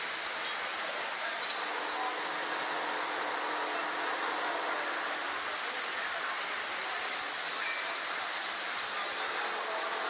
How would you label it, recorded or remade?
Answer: recorded